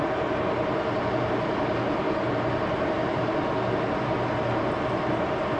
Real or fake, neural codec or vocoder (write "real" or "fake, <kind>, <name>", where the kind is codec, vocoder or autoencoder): real